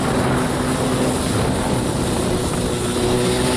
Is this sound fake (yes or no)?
no